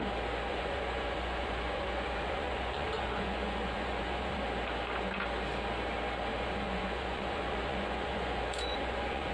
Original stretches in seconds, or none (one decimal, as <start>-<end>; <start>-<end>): 0.0-0.5; 4.4-6.3